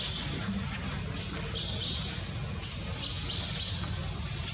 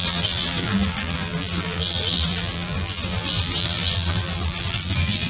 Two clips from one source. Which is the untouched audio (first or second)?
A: first